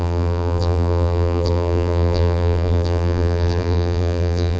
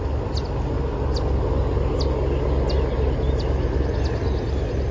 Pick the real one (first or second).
second